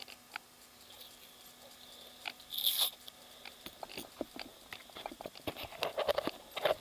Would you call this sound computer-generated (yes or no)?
no